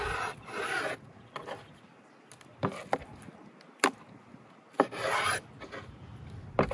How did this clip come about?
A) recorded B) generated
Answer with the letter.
A